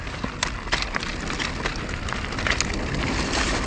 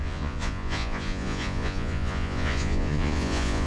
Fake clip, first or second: second